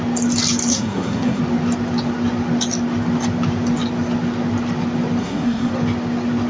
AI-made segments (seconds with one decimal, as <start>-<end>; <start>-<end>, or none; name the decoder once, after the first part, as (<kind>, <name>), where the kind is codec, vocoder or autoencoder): 0.7-1.4 (codec, SNAC); 5.2-5.7

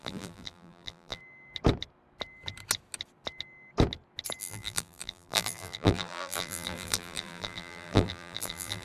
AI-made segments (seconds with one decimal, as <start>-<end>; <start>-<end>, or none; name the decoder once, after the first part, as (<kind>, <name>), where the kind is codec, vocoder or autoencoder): 0.0-1.2 (vocoder, BigVGAN v2); 4.4-8.8

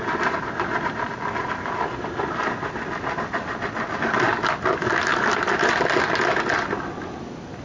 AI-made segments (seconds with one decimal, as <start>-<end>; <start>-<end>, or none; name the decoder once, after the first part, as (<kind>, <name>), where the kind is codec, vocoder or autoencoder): 5.1-5.7 (vocoder, BigVGAN v2)